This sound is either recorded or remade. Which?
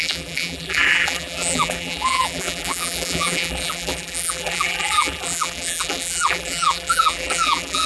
remade